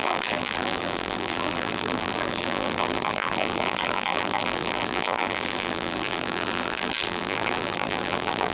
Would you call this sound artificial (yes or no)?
yes